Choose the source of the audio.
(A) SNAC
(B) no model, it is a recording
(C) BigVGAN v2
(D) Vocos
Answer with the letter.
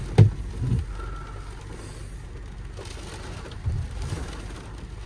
B